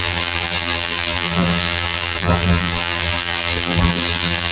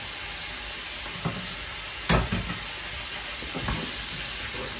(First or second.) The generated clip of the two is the first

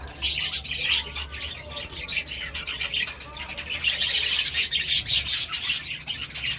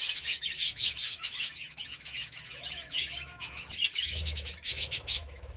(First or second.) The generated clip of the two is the second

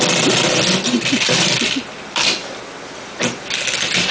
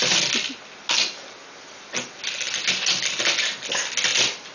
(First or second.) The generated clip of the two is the first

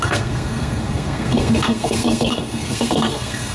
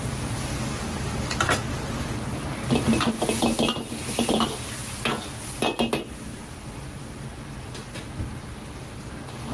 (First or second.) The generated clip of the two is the first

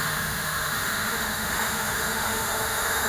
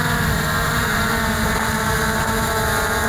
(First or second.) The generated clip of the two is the first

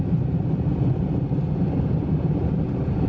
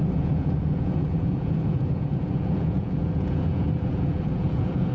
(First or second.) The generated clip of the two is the second